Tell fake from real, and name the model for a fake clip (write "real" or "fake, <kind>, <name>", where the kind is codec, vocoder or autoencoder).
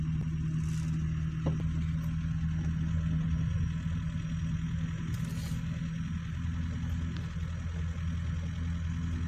real